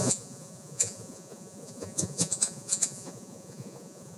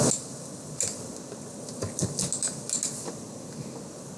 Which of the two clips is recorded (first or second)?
second